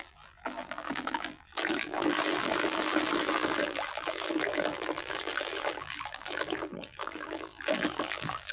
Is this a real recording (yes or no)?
no